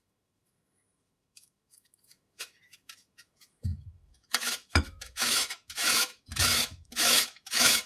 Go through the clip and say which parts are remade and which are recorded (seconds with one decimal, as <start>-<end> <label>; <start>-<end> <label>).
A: 0.0-7.9 remade